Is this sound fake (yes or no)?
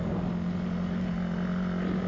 no